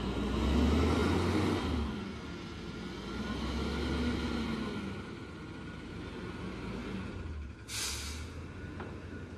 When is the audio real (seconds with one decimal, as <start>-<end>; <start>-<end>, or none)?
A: 0.0-9.4